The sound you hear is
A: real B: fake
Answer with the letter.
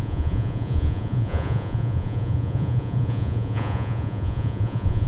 B